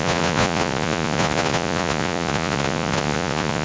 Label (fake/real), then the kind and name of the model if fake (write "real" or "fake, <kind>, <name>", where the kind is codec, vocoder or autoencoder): fake, vocoder, Vocos